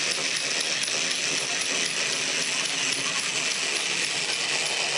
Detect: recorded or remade recorded